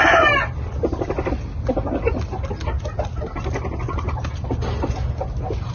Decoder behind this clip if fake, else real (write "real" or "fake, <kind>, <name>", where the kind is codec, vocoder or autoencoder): real